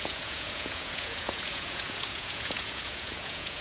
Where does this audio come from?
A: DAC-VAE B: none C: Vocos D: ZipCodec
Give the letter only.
C